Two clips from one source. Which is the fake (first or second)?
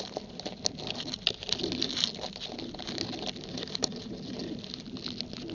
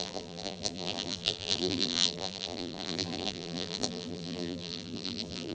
second